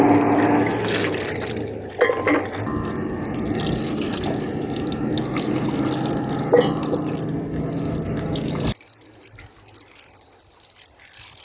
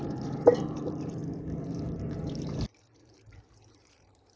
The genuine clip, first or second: first